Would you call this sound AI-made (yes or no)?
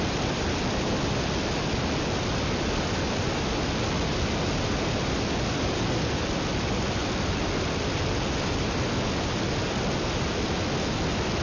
no